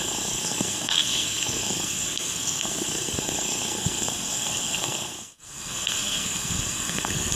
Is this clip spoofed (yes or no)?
yes